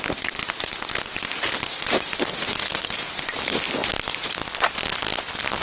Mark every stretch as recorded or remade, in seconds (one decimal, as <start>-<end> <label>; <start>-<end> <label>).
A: 0.0-5.6 recorded